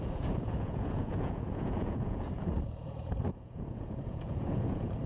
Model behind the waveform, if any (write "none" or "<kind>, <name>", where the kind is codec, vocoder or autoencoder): vocoder, Vocos